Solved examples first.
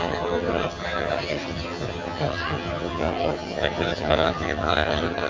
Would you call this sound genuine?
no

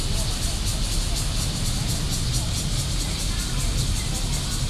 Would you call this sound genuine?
yes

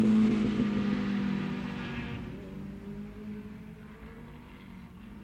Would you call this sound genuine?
yes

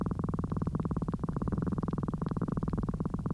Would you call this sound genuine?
no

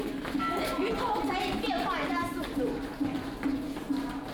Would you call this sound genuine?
yes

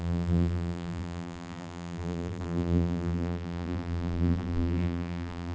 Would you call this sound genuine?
no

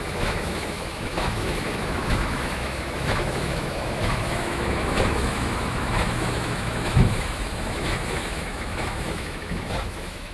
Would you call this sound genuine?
no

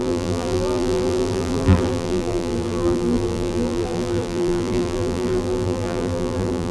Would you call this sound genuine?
no